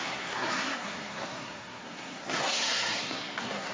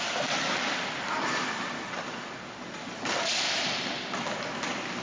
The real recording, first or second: second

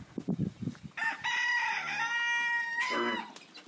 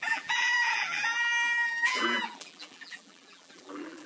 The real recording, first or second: first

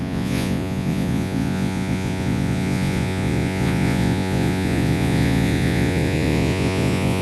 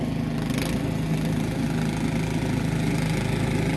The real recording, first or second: second